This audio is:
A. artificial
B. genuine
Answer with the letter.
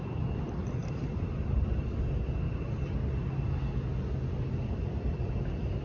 B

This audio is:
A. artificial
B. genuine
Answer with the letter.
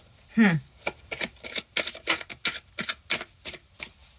B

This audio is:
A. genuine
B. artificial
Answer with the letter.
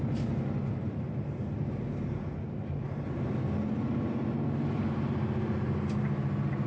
A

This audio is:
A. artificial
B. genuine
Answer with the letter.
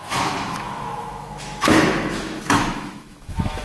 A